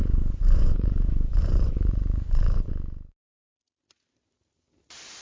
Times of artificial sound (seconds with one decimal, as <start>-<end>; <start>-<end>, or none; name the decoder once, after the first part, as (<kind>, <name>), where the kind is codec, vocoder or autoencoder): 0.0-2.7 (vocoder, Vocos)